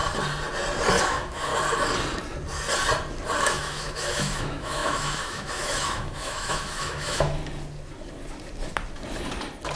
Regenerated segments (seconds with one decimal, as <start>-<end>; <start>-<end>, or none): 1.0-1.5; 3.4-7.4